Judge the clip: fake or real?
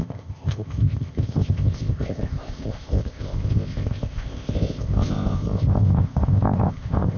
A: fake